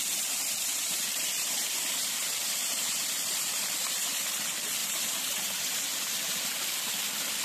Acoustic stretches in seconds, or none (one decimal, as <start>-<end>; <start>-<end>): 0.0-0.8; 3.7-4.8; 6.9-7.4